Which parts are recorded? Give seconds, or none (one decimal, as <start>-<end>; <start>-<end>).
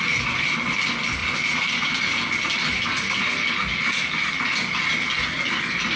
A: 0.0-6.0